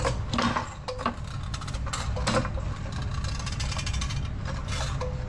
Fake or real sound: real